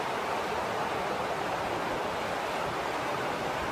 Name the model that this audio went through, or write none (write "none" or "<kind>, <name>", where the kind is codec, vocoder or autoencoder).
none